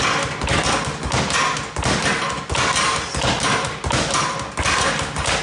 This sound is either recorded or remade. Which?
recorded